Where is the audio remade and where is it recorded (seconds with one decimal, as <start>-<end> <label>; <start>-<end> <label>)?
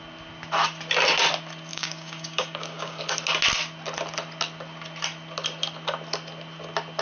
0.0-1.7 recorded; 1.7-3.0 remade; 3.0-7.0 recorded